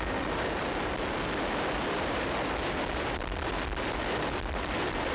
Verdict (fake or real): fake